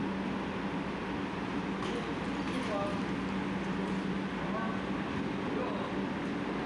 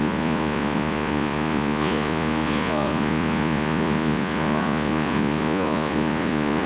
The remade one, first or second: second